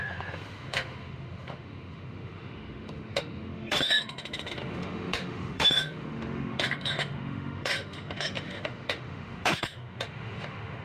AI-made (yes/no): yes